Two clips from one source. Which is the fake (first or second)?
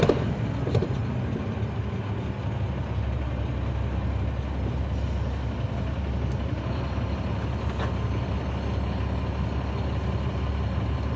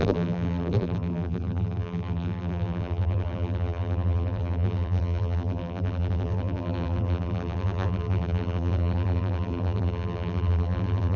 second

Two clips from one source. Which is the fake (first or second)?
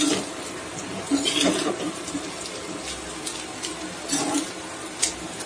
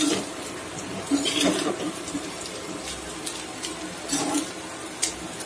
second